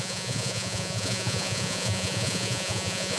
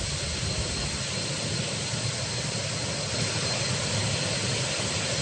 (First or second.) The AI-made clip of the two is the first